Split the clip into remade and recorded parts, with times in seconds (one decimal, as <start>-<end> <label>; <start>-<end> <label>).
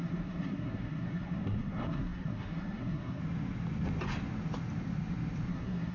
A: 0.0-3.2 remade; 3.2-5.5 recorded; 5.5-5.9 remade